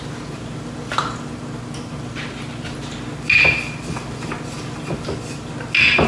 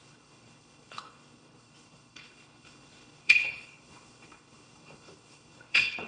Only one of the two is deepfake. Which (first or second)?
second